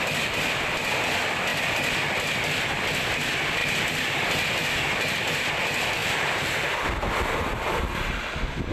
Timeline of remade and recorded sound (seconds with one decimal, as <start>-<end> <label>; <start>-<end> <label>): 0.0-6.0 recorded; 6.0-6.5 remade; 6.5-8.7 recorded